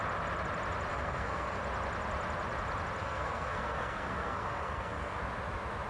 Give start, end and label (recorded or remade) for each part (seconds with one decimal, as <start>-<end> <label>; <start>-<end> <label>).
0.0-0.9 recorded; 0.9-1.6 remade; 1.6-3.0 recorded; 3.0-5.2 remade; 5.2-5.9 recorded